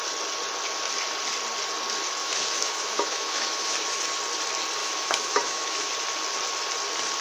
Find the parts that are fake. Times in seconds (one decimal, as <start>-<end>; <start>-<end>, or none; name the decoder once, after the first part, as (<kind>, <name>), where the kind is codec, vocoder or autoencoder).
2.2-4.0 (autoencoder, DAC-VAE); 4.8-5.9